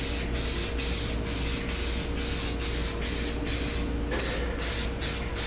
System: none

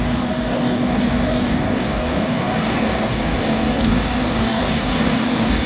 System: codec, DAC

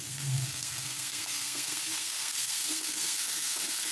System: codec, SNAC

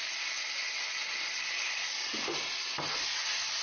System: none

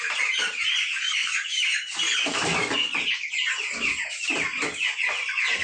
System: none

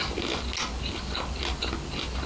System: none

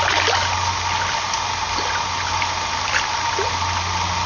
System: none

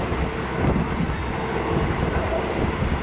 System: none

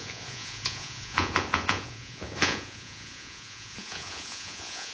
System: vocoder, Vocos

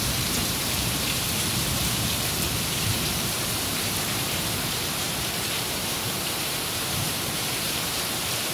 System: vocoder, BigVGAN v2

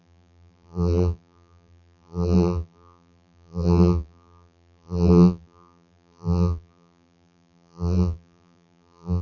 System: vocoder, BigVGAN v2